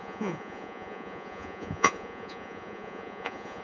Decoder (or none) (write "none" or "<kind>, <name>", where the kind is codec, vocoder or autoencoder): vocoder, Vocos